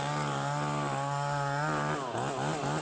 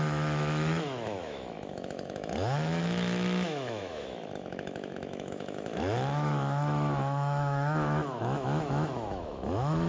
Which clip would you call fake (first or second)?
second